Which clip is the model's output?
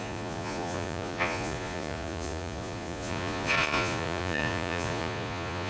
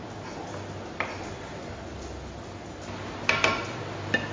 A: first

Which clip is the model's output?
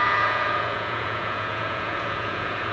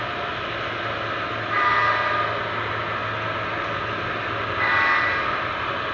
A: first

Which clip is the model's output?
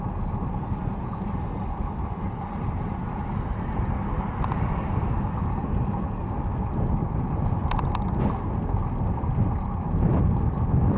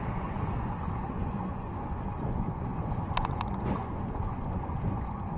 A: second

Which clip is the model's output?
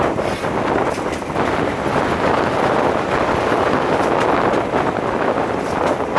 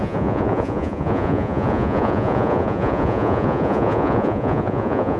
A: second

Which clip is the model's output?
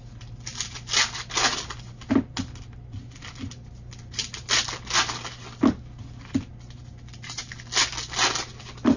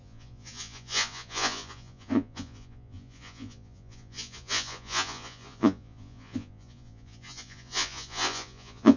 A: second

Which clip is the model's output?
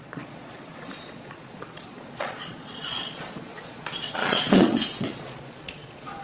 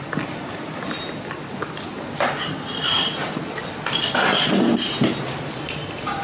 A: first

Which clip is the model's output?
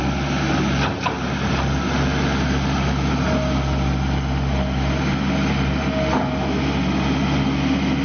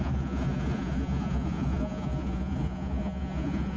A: second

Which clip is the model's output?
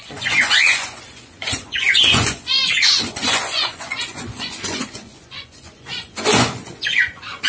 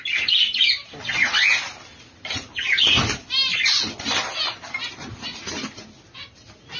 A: first